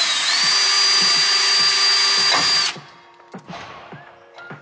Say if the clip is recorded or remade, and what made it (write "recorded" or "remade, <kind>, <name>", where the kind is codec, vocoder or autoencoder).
recorded